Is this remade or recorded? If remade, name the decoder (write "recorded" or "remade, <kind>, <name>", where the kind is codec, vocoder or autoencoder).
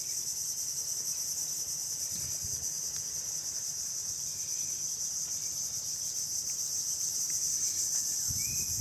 recorded